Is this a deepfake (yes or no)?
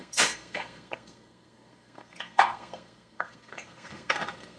yes